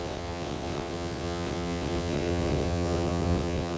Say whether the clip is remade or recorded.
remade